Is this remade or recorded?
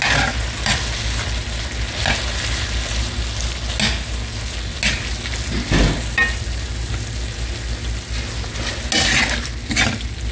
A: recorded